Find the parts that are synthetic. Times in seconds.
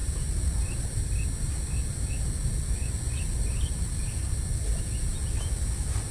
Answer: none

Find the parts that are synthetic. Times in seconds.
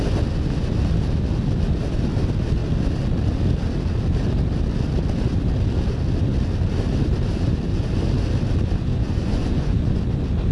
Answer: 8.9-10.0 (vocoder, Vocos)